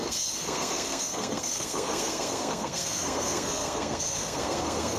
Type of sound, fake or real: fake